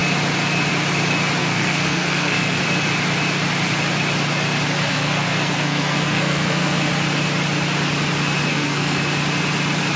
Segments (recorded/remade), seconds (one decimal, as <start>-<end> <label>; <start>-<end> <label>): 0.0-1.4 recorded; 1.4-2.6 remade; 2.6-4.9 recorded; 4.9-6.9 remade; 6.9-8.5 recorded; 8.5-9.0 remade; 9.0-10.0 recorded